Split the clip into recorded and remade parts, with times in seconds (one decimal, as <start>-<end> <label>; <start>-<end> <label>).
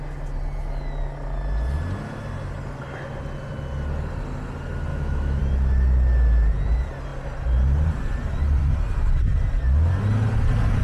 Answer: 0.0-4.9 recorded; 4.9-5.4 remade; 5.4-10.8 recorded